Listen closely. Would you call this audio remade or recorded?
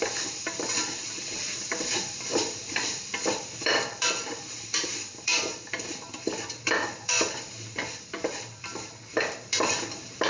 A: remade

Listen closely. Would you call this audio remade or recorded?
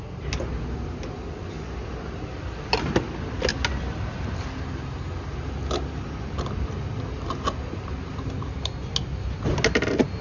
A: recorded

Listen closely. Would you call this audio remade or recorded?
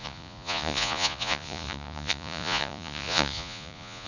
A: remade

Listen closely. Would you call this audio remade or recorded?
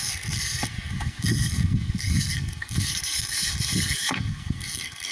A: remade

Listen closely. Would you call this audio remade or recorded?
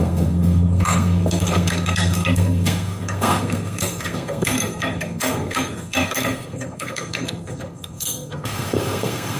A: remade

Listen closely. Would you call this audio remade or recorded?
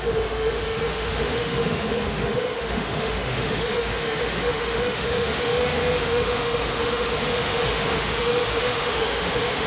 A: remade